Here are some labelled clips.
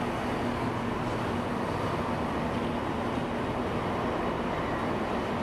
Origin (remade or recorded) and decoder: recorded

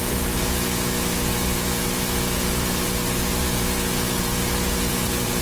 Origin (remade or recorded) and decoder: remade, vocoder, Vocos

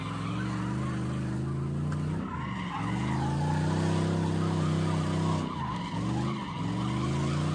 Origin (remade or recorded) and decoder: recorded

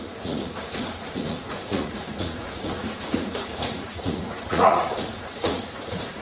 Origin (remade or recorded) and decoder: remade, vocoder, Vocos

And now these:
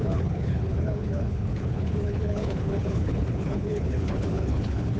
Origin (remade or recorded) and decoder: remade, codec, HILCodec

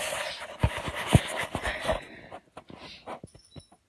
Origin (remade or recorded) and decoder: recorded